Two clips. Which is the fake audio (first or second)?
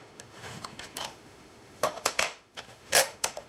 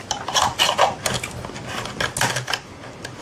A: first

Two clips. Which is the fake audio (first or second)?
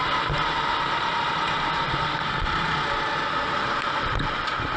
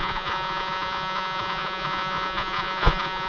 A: second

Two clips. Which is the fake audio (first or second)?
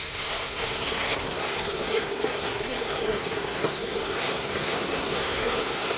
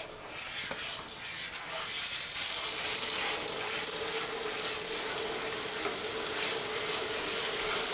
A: first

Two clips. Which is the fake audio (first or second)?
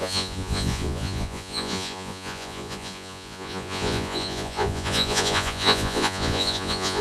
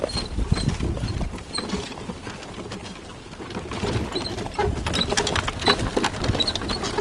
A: first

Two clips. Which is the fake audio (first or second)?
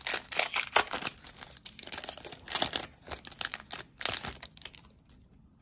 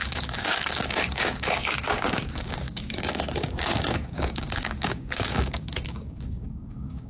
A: second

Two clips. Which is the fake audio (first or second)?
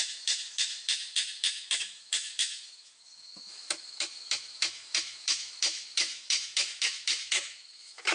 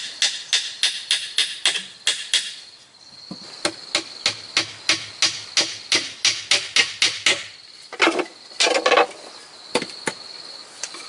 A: first